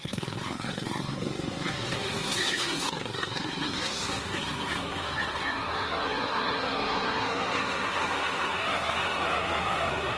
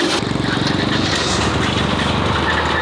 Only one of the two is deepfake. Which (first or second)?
first